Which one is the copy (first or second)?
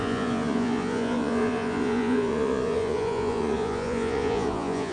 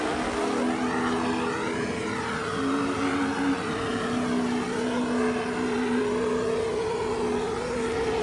first